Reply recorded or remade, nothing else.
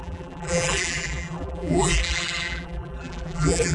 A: remade